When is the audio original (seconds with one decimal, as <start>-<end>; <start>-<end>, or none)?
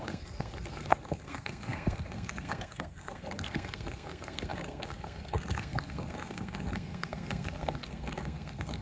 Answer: none